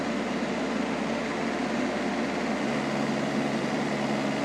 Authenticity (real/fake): real